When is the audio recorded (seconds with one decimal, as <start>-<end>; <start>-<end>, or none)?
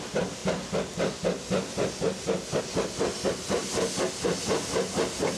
0.0-5.4